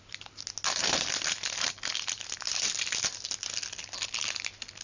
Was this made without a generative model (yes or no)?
yes